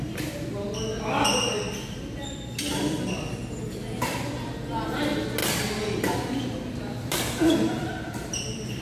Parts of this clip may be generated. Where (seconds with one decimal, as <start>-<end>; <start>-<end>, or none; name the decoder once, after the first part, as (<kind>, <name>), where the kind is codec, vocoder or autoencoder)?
5.4-8.8 (vocoder, BigVGAN v2)